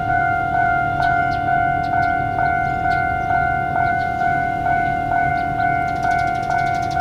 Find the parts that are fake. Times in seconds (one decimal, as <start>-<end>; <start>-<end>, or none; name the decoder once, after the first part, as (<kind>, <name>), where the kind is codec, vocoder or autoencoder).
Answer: 0.0-1.2 (autoencoder, DAC-VAE); 3.9-5.3